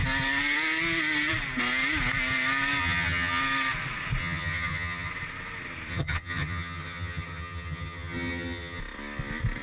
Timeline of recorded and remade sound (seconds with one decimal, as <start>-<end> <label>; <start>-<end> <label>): 0.0-2.8 recorded; 2.8-3.4 remade; 3.4-4.2 recorded; 4.2-5.1 remade; 5.1-5.9 recorded; 5.9-8.8 remade; 8.8-9.6 recorded